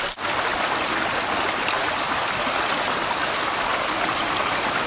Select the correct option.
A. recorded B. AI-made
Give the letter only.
A